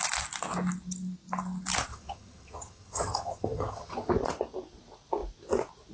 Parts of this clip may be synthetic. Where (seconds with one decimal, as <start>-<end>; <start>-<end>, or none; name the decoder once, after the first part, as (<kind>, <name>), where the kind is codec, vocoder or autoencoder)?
1.9-4.1 (vocoder, HiFi-GAN)